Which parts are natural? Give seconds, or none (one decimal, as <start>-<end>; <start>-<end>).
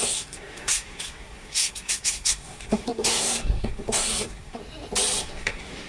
4.6-5.2